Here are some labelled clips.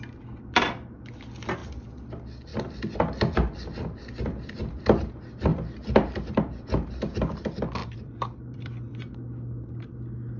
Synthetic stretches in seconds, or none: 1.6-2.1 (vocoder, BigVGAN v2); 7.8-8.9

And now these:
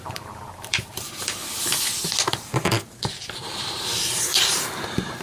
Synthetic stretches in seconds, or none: 0.0-1.4 (vocoder, BigVGAN v2); 2.3-5.2

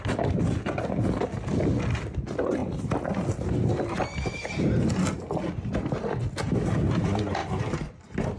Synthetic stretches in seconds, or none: none

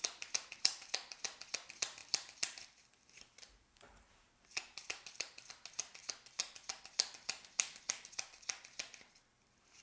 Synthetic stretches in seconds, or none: 2.0-5.5 (vocoder, BigVGAN v2)

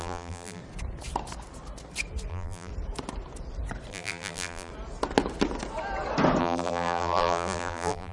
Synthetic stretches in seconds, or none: 0.0-0.6 (vocoder, BigVGAN v2); 2.3-2.7; 3.9-4.7; 6.4-8.1